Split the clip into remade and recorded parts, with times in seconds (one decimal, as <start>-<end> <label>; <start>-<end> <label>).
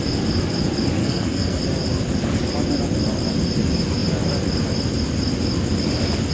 0.0-1.0 recorded; 1.0-1.6 remade; 1.6-6.3 recorded